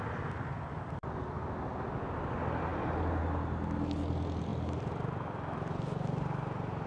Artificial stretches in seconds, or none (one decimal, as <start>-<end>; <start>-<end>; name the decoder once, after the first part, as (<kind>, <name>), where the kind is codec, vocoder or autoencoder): none